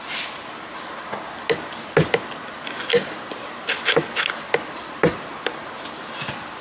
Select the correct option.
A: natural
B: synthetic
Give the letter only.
A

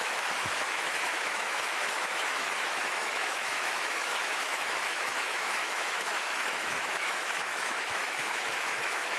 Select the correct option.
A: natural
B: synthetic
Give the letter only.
B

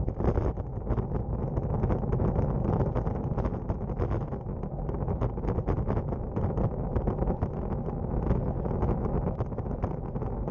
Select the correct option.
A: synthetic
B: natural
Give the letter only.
B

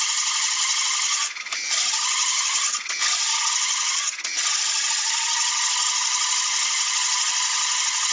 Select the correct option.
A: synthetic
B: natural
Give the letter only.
B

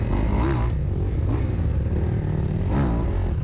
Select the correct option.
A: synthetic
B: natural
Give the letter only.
B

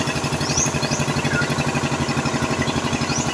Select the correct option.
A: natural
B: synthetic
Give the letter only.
A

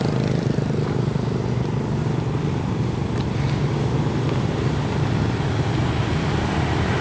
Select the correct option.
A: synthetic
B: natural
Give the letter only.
A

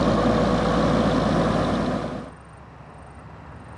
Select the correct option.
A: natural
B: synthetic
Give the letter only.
A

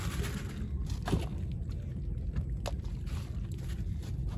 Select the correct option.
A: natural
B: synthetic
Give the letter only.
A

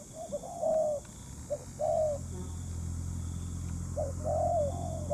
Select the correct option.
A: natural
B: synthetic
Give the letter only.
A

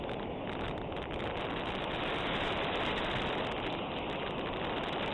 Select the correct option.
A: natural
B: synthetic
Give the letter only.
A